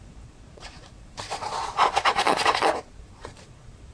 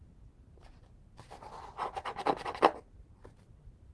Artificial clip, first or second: first